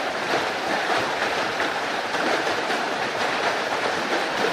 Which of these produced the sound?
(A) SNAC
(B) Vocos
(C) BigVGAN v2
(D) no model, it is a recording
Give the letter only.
C